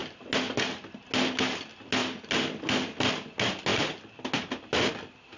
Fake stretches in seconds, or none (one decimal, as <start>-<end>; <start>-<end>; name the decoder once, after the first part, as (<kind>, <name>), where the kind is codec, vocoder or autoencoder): none